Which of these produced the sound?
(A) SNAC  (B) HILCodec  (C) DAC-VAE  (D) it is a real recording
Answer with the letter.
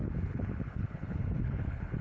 B